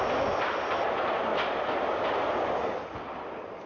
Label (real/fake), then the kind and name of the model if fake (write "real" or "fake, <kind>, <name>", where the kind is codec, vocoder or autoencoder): real